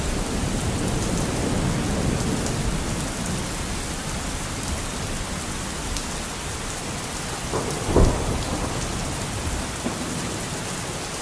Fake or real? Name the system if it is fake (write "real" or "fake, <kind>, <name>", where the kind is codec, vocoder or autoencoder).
real